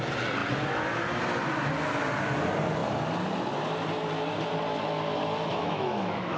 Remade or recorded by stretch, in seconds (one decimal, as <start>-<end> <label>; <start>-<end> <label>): 0.0-5.5 recorded; 5.5-6.4 remade